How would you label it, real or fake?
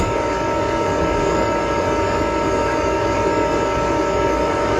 fake